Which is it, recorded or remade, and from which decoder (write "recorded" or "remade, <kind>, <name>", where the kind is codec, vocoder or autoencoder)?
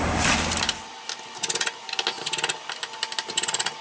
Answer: recorded